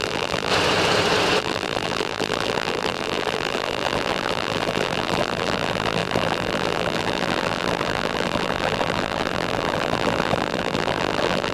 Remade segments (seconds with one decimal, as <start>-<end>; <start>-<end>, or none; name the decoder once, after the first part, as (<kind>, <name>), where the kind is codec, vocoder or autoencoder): 0.0-0.5 (vocoder, BigVGAN v2); 1.4-11.5